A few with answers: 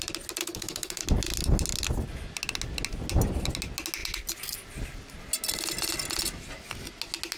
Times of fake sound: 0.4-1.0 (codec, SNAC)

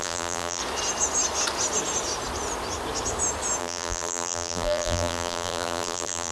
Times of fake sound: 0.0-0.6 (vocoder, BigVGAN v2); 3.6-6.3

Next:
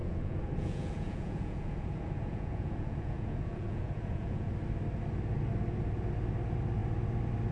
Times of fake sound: 0.0-4.5 (vocoder, Vocos)

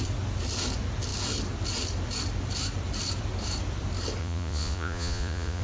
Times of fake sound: 4.2-5.6 (vocoder, Vocos)

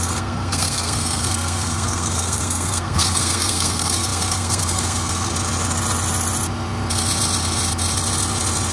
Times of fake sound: 0.0-5.3 (codec, SNAC)